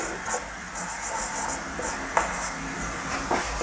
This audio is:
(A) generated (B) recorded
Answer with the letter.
B